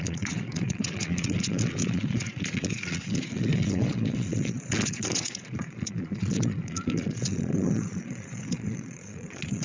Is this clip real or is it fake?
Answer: fake